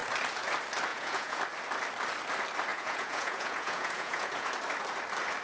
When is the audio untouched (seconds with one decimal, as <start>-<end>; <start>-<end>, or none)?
0.0-0.9; 1.4-2.7; 4.5-5.4